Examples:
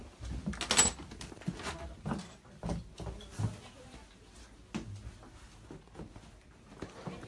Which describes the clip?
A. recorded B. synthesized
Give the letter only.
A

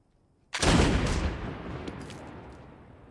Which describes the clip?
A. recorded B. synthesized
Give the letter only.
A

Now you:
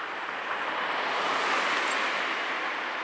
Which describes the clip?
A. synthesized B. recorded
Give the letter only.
B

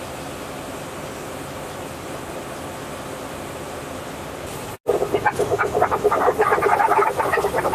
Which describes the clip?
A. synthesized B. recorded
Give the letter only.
B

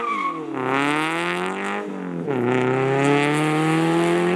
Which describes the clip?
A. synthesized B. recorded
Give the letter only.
B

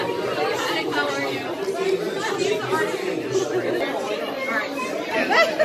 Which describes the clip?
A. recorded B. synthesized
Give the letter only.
A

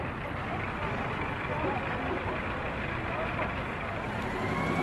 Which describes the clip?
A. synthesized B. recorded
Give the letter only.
B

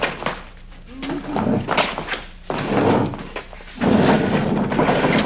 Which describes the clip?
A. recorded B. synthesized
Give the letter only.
A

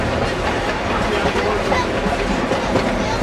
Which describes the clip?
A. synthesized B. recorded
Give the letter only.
B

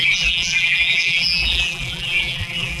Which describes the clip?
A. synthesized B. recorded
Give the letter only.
A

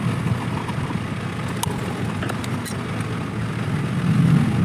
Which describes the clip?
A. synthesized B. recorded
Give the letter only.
B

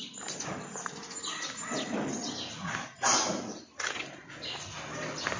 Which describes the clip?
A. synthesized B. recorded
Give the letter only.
B